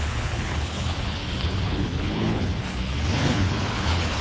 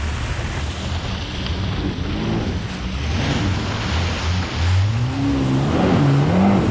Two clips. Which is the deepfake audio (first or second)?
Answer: first